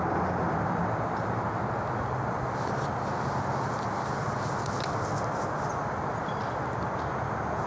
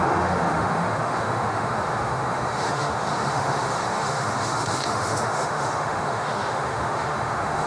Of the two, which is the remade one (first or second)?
second